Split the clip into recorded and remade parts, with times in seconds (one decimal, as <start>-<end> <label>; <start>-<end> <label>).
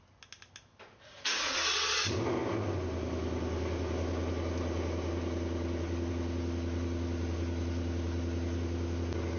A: 0.0-9.4 recorded